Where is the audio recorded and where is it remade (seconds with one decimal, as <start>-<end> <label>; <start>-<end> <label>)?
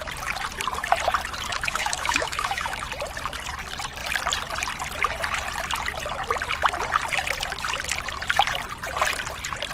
0.0-1.5 recorded; 1.5-2.8 remade; 2.8-9.7 recorded